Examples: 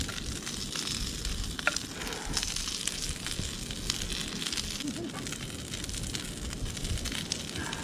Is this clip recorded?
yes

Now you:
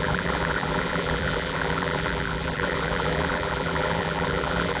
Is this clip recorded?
no